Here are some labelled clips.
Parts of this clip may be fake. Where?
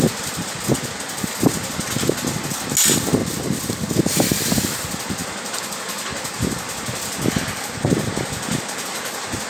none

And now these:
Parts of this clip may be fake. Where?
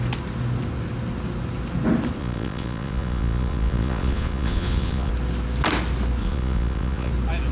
2.2-5.1 (vocoder, Vocos); 6.2-7.1